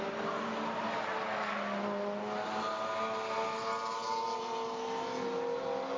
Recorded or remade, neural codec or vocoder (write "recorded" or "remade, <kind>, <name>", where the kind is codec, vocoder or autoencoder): recorded